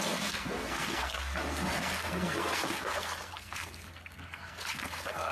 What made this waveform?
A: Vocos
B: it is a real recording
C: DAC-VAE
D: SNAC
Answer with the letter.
D